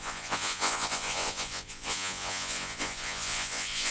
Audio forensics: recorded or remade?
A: remade